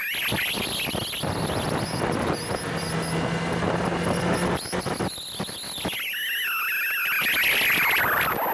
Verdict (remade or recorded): recorded